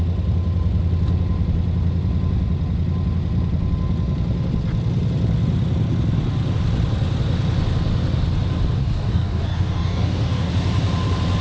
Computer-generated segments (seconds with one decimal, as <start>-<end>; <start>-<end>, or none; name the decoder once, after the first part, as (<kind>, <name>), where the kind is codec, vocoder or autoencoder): 8.8-10.5 (codec, DAC)